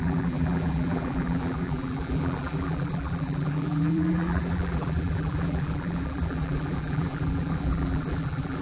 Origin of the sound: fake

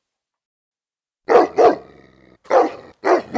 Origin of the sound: real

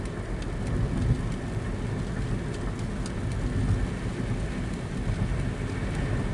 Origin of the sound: real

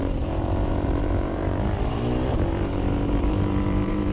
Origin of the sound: fake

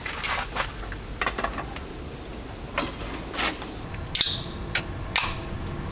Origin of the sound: real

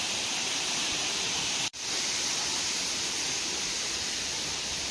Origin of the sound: fake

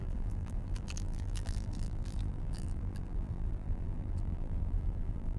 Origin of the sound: fake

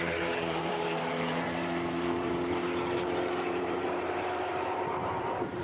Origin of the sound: fake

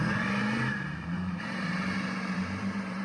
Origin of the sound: fake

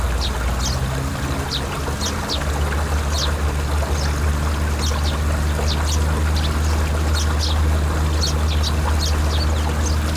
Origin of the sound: real